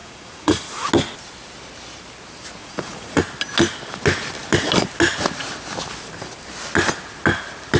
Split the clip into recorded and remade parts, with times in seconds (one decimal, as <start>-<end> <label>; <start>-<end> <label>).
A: 0.0-0.9 remade; 0.9-2.6 recorded; 2.6-3.2 remade; 3.2-7.8 recorded